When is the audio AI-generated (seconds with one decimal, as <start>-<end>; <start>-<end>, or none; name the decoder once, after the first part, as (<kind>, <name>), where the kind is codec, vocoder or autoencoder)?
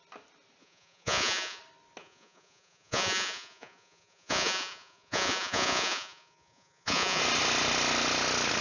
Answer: 0.6-1.6 (vocoder, Vocos); 2.0-7.2